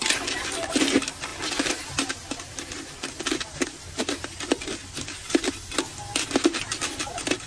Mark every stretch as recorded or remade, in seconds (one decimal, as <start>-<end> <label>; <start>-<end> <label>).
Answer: 0.0-7.5 recorded